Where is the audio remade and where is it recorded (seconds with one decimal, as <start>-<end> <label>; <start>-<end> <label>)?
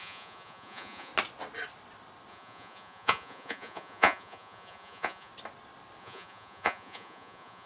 0.0-1.1 remade; 1.1-2.3 recorded; 2.3-5.3 remade; 5.3-6.0 recorded; 6.0-7.7 remade